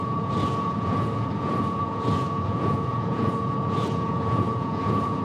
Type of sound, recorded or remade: remade